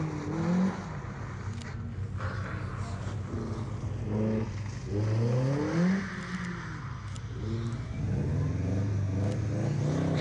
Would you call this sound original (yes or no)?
yes